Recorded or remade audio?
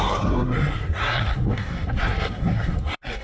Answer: remade